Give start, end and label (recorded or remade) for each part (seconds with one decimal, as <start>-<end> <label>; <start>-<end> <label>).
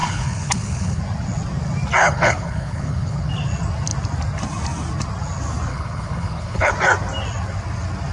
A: 0.0-1.0 remade; 1.0-2.0 recorded; 2.0-3.3 remade; 3.3-5.7 recorded; 5.7-6.7 remade; 6.7-8.1 recorded